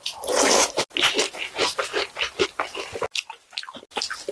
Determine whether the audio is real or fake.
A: real